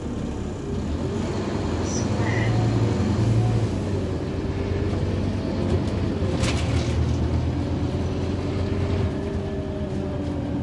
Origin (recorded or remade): recorded